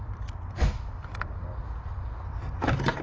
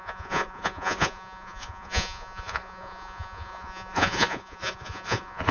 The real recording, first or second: first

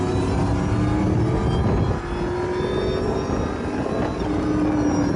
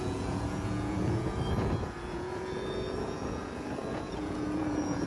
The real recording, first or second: first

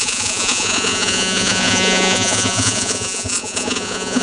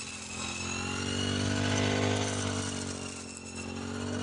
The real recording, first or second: second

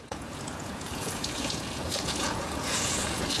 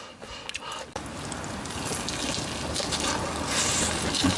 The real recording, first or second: second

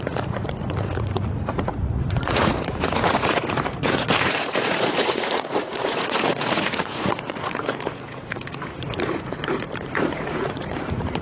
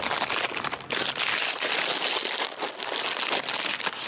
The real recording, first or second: second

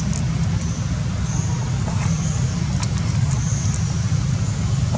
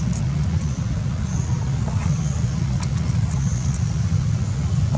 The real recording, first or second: first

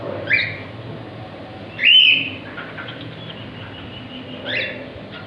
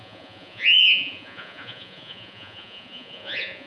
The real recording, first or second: first